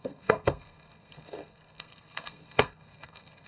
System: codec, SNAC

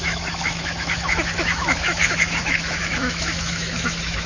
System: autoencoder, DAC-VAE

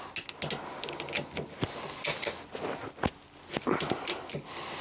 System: none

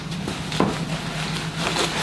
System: none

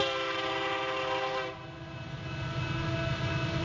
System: none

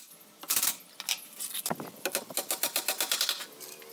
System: none